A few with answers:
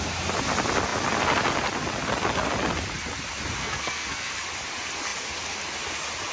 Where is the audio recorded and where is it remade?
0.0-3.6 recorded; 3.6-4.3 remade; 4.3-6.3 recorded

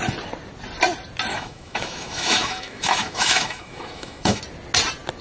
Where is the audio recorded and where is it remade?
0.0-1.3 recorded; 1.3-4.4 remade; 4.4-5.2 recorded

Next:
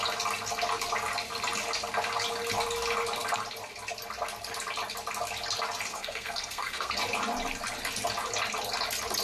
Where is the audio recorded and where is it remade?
0.0-5.9 recorded; 5.9-6.9 remade; 6.9-9.2 recorded

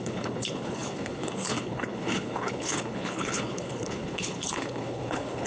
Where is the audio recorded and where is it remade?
0.0-5.5 remade

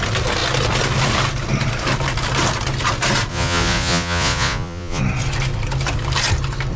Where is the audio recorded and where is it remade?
0.0-3.3 recorded; 3.3-5.0 remade; 5.0-6.8 recorded

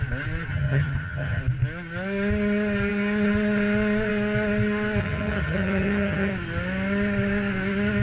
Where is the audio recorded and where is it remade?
0.0-0.5 recorded; 0.5-1.4 remade; 1.4-5.0 recorded; 5.0-6.3 remade; 6.3-8.0 recorded